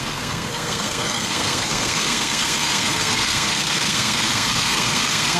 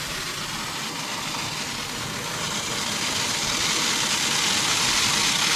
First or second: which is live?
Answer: second